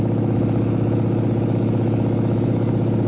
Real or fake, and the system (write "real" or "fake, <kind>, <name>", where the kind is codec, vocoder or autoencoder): fake, autoencoder, DAC-VAE